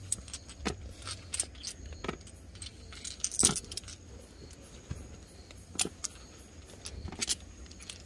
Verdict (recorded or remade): recorded